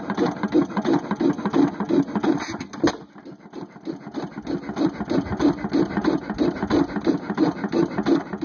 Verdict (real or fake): real